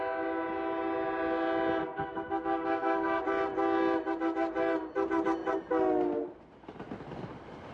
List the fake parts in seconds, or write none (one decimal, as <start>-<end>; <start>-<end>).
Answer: 1.8-3.2